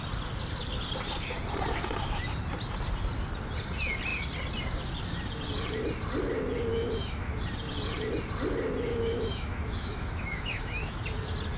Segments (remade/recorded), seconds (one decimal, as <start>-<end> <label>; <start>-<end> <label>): 0.0-6.7 recorded; 6.7-7.3 remade; 7.3-8.9 recorded; 8.9-11.0 remade; 11.0-11.6 recorded